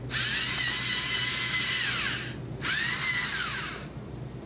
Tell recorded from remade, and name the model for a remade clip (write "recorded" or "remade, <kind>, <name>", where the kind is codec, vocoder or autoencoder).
recorded